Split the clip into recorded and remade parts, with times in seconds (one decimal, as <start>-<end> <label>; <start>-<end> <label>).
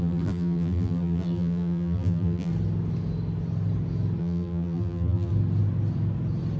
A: 0.0-2.5 remade; 2.5-4.2 recorded; 4.2-5.3 remade; 5.3-6.6 recorded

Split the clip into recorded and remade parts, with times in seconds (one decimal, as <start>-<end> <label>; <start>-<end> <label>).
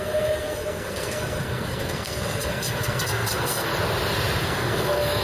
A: 0.0-3.7 remade; 3.7-4.4 recorded; 4.4-5.2 remade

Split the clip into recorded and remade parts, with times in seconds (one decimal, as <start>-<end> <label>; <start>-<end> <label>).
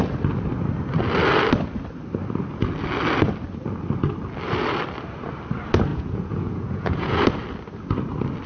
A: 0.0-5.9 recorded; 5.9-7.2 remade; 7.2-8.5 recorded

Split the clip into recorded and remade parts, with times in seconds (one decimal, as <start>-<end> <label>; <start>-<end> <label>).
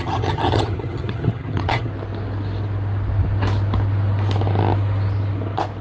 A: 0.0-1.9 remade; 1.9-5.8 recorded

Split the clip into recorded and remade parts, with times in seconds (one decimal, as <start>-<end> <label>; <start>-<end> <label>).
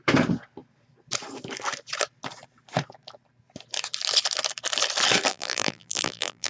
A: 0.0-5.3 recorded; 5.3-6.5 remade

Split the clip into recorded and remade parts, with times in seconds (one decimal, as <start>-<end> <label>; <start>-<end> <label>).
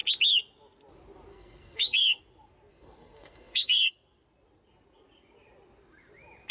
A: 0.0-1.3 recorded; 1.3-2.2 remade; 2.2-2.7 recorded; 2.7-3.9 remade; 3.9-6.5 recorded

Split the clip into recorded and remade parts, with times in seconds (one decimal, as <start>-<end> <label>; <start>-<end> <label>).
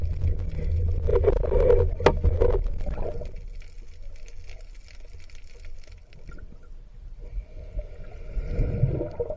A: 0.0-9.4 recorded